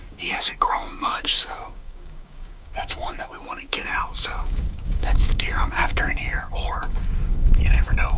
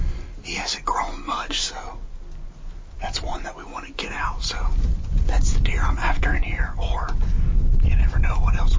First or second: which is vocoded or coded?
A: first